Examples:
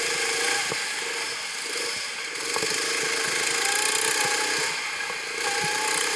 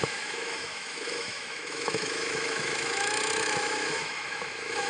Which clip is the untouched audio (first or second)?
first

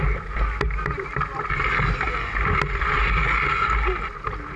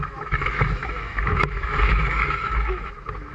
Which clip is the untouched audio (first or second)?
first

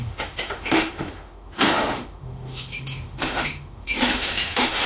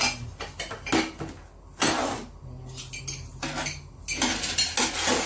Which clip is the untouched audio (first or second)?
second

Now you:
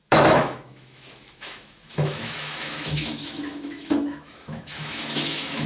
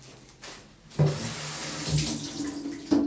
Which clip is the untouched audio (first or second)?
second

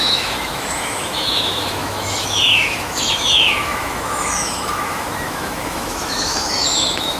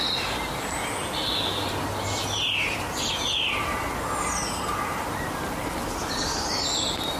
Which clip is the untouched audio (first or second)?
second